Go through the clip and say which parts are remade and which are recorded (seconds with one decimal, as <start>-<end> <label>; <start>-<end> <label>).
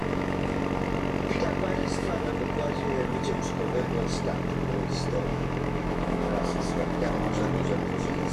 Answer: 0.0-0.6 remade; 0.6-1.8 recorded; 1.8-2.3 remade; 2.3-5.3 recorded; 5.3-7.1 remade; 7.1-8.3 recorded